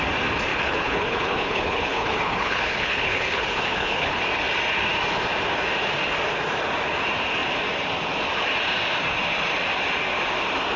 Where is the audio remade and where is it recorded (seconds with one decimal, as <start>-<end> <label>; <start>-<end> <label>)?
0.0-0.5 recorded; 0.5-4.2 remade; 4.2-10.8 recorded